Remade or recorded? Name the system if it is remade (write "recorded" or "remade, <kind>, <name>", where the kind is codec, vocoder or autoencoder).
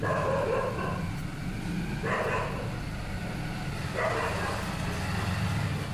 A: recorded